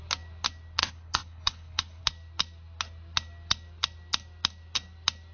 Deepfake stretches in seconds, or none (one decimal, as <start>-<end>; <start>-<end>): 0.8-2.0